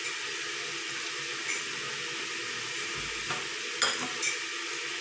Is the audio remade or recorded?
recorded